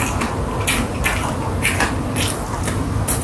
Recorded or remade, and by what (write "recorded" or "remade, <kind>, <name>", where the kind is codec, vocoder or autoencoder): recorded